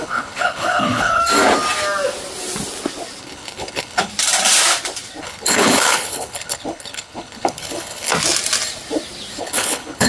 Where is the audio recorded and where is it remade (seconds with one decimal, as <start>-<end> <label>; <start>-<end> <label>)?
0.0-1.2 remade; 1.2-3.2 recorded; 3.2-4.1 remade; 4.1-5.2 recorded; 5.2-8.1 remade; 8.1-9.4 recorded; 9.4-10.1 remade